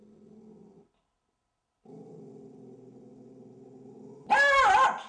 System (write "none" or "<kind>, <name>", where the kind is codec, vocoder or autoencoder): none